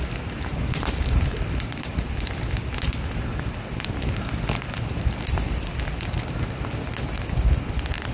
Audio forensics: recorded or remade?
recorded